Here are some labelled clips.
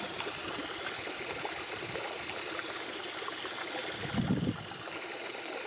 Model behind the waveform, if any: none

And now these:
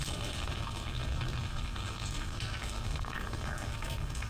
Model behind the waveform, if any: codec, SNAC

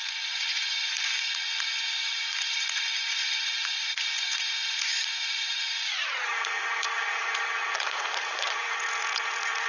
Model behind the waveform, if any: vocoder, Vocos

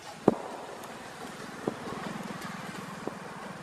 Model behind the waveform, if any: none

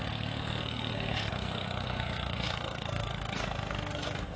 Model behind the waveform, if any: codec, SNAC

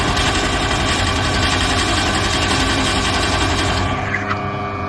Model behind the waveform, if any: none